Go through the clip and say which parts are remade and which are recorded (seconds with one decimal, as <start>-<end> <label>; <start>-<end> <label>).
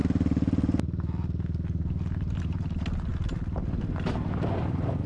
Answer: 0.0-5.1 recorded